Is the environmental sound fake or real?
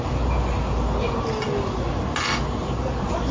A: real